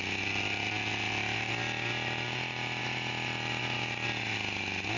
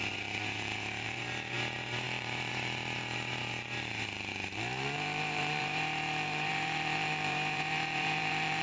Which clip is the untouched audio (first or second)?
first